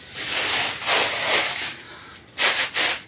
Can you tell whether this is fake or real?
real